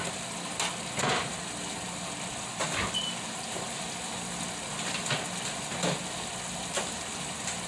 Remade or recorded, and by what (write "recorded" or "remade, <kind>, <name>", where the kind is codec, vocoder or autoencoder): recorded